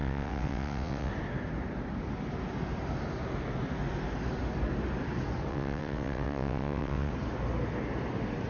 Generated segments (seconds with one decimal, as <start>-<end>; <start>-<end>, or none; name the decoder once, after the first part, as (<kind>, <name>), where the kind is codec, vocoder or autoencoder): 0.0-1.1 (vocoder, WaveNeXt); 5.5-7.1